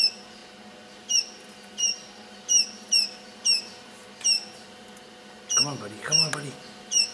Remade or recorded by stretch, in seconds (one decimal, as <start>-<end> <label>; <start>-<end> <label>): 0.0-7.1 recorded